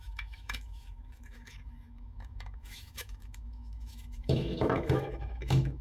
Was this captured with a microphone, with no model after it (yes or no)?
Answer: no